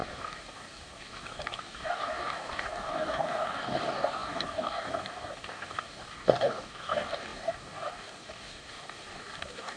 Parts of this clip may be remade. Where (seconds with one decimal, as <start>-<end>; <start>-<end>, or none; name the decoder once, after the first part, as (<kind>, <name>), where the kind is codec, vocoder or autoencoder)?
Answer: 0.0-9.8 (codec, DAC)